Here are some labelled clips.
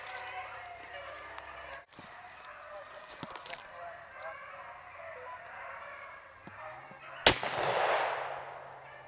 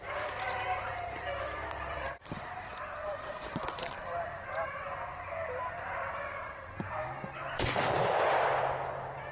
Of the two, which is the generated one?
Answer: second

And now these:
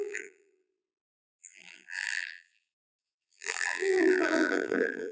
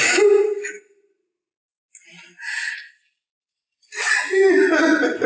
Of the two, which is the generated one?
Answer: first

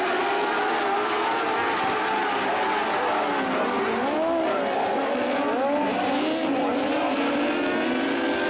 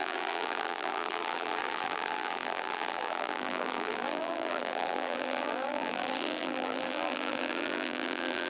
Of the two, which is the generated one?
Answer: second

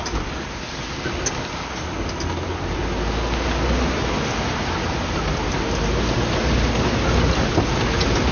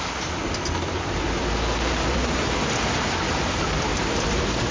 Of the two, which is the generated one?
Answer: second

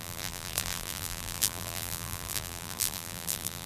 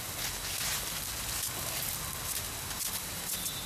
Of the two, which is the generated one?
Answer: first